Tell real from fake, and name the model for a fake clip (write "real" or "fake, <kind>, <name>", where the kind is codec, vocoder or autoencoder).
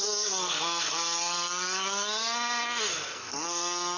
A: fake, codec, SNAC